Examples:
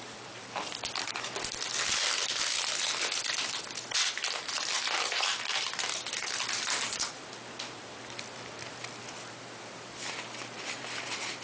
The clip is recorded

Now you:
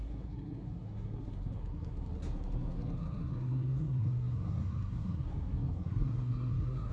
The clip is remade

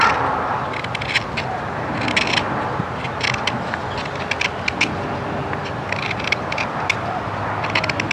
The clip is recorded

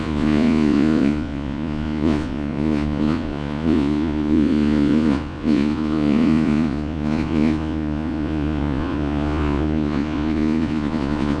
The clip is remade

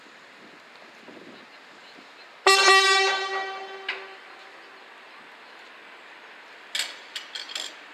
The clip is recorded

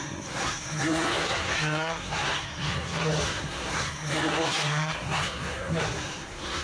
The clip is remade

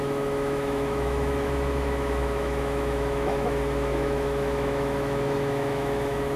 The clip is remade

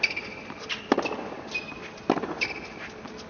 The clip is recorded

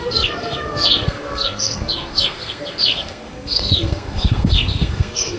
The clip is remade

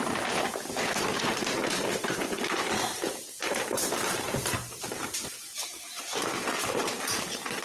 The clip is remade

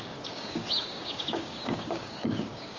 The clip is remade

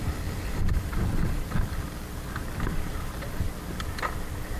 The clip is recorded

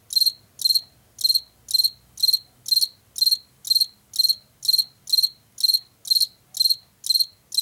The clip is recorded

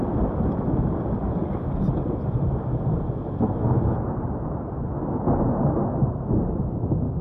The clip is recorded